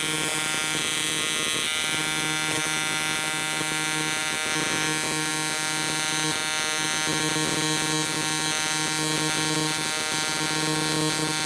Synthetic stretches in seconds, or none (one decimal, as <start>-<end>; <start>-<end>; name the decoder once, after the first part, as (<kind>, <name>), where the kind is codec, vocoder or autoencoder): none